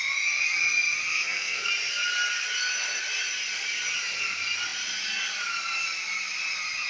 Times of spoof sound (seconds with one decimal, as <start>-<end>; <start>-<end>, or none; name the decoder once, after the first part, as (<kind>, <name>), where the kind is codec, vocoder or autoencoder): 1.1-1.7 (codec, SNAC)